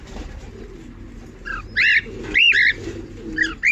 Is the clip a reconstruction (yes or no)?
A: no